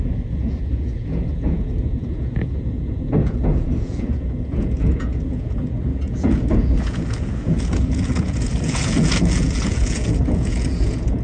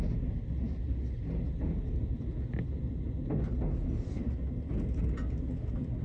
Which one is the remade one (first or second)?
first